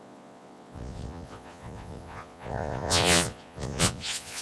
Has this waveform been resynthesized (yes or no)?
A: yes